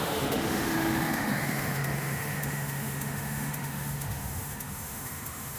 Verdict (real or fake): fake